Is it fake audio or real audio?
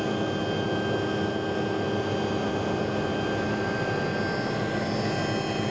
real